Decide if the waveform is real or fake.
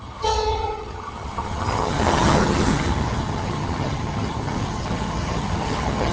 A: fake